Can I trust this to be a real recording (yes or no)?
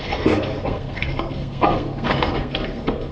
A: no